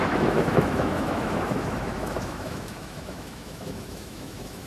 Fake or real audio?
fake